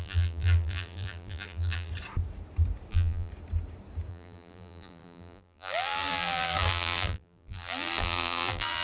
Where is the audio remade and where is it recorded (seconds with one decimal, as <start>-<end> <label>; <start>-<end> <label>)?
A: 0.0-1.9 remade; 1.9-2.9 recorded; 2.9-3.3 remade; 3.3-4.1 recorded; 4.1-8.8 remade